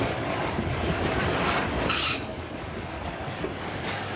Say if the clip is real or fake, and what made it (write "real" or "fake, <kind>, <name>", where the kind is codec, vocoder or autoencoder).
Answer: fake, codec, DAC